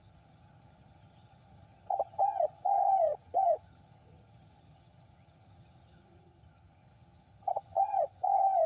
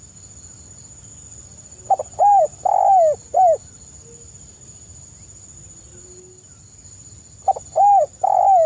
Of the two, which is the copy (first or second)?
first